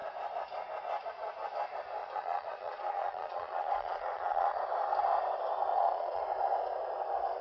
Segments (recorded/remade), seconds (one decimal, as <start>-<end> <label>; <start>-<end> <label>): 0.0-2.0 recorded; 2.0-4.6 remade; 4.6-5.7 recorded; 5.7-6.2 remade; 6.2-7.4 recorded